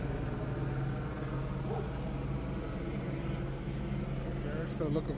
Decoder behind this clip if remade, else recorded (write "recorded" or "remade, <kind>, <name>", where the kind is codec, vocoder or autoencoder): recorded